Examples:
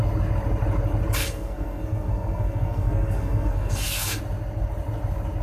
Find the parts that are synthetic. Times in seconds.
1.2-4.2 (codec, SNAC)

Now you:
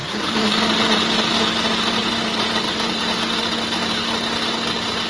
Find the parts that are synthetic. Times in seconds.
0.0-0.6 (vocoder, BigVGAN v2); 2.0-3.0

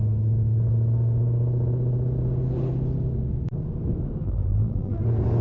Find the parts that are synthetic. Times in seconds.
4.2-5.0 (vocoder, BigVGAN v2)

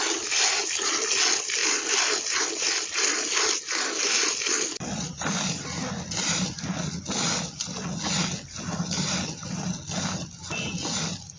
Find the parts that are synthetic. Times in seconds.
none

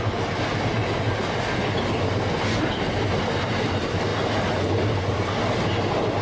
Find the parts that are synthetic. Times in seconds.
none

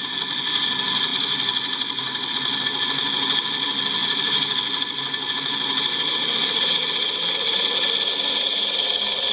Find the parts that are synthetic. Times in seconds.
none

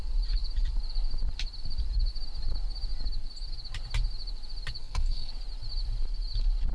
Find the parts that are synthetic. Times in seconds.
4.8-5.3 (codec, SNAC)

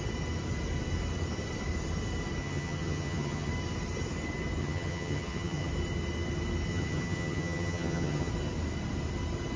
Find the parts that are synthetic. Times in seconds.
2.4-3.5 (vocoder, HiFi-GAN); 4.6-5.7; 6.7-8.3